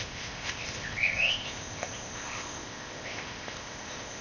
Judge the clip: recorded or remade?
remade